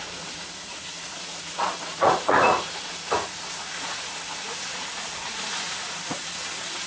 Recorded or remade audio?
remade